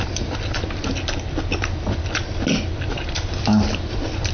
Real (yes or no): yes